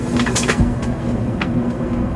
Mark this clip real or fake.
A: fake